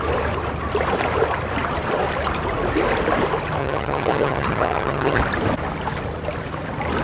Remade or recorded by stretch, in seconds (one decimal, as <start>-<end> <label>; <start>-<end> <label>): 0.0-3.6 recorded; 3.6-5.2 remade; 5.2-7.0 recorded